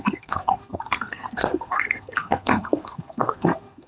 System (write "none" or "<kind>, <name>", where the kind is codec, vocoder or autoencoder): codec, SNAC